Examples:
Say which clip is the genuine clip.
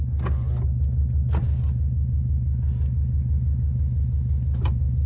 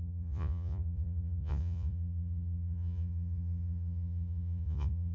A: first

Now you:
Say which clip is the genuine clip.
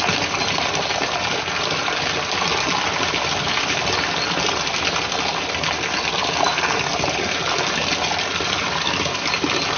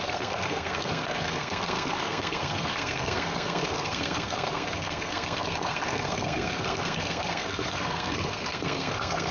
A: first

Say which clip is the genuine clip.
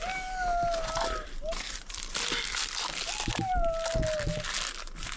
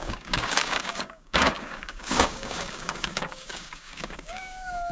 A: first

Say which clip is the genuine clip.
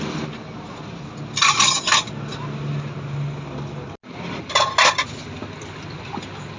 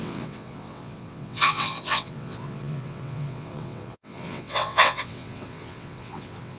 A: first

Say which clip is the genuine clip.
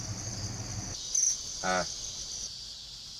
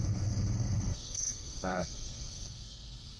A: first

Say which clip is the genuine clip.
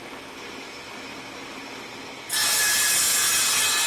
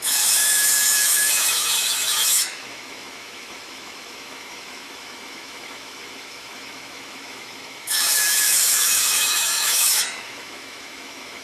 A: first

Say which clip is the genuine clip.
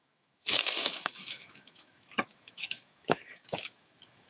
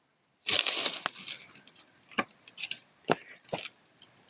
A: second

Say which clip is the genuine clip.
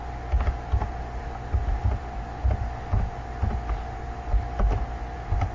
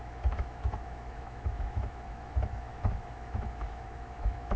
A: first